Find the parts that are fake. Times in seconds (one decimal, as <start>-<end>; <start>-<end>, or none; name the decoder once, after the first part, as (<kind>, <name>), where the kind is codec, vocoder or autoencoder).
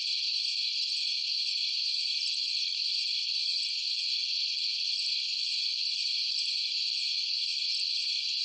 0.0-3.4 (vocoder, BigVGAN v2); 6.0-7.2